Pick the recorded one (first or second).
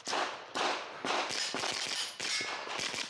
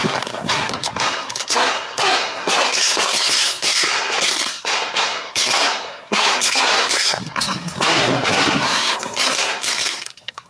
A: first